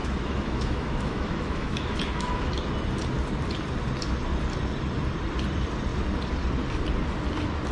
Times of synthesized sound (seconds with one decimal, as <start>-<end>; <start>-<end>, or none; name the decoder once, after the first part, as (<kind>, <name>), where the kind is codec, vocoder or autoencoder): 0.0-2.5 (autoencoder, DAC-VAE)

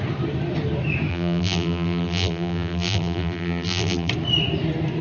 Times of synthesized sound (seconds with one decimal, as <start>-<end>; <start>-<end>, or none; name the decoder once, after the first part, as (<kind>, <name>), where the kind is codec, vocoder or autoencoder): 1.1-4.1 (vocoder, BigVGAN v2)

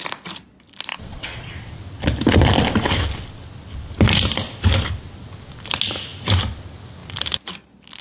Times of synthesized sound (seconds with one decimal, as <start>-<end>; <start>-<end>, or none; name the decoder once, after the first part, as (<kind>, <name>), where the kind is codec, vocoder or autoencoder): 0.9-1.4 (vocoder, WaveNeXt)

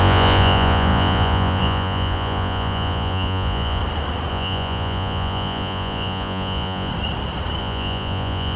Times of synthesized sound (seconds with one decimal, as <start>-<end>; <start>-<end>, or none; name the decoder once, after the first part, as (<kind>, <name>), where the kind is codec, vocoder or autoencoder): 0.0-3.8 (vocoder, Vocos); 4.3-6.9; 7.6-8.6

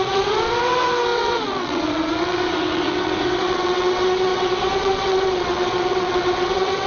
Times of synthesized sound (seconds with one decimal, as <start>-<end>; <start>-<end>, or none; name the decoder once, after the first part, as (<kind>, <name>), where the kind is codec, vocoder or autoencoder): 0.0-6.9 (vocoder, WaveNeXt)

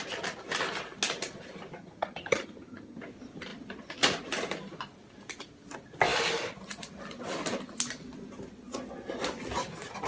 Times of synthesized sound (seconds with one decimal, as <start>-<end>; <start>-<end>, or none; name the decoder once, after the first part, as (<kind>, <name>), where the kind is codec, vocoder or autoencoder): 1.8-3.0 (vocoder, HiFi-GAN)

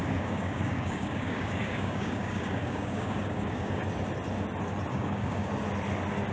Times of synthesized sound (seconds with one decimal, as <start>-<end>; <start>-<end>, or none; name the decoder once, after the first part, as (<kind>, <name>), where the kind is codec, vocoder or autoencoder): 0.0-3.8 (codec, DAC); 4.9-5.5

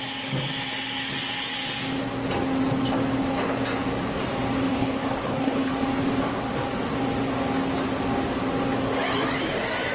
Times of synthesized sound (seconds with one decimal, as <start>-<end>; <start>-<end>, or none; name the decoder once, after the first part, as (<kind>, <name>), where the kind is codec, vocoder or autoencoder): 4.7-5.7 (codec, HILCodec)